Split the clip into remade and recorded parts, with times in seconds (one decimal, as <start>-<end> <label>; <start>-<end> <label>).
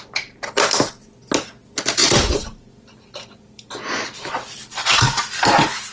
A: 0.0-2.0 recorded; 2.0-3.7 remade; 3.7-4.6 recorded; 4.6-5.2 remade; 5.2-5.9 recorded